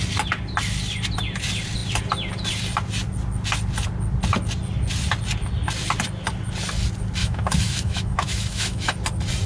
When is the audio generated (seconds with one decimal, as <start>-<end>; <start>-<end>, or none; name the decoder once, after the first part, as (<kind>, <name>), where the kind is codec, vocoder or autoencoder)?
7.2-8.9 (autoencoder, DAC-VAE)